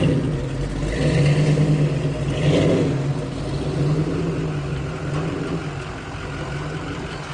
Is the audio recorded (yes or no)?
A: yes